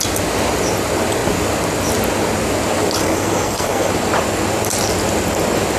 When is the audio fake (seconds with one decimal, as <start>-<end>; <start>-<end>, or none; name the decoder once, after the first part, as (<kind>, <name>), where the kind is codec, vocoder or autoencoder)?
3.0-3.9 (codec, SNAC)